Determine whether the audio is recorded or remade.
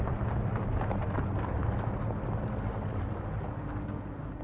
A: recorded